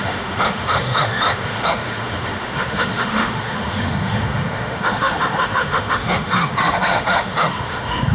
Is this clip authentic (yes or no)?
no